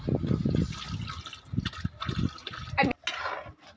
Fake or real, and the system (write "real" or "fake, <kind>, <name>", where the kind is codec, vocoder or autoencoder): real